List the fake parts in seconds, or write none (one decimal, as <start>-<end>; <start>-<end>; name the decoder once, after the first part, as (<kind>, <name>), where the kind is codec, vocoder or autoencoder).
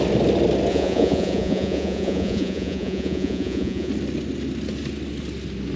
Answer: 0.7-3.9 (vocoder, Vocos)